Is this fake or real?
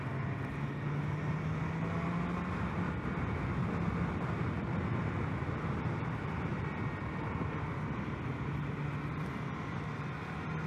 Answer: real